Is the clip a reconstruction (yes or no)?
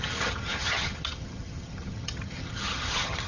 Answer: yes